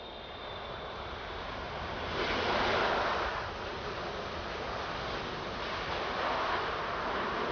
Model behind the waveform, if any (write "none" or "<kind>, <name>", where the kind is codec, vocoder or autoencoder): none